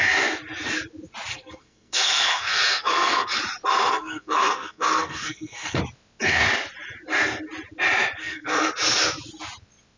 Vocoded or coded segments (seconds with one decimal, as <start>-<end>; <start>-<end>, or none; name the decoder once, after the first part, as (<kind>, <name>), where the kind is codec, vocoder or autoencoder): 1.3-3.4 (codec, SNAC); 3.9-5.8; 8.2-8.7